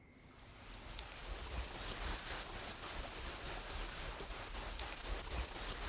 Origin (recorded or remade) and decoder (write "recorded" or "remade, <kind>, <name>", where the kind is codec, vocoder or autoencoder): recorded